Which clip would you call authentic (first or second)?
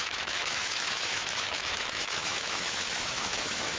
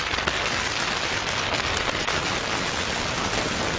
second